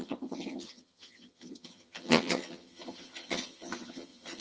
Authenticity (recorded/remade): remade